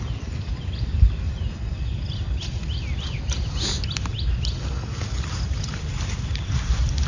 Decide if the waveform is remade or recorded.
recorded